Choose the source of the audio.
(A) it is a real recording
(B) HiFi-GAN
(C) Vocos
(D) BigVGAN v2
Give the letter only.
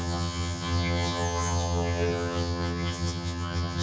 B